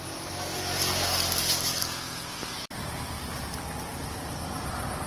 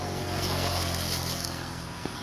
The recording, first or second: first